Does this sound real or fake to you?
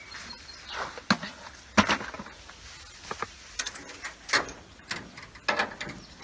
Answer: real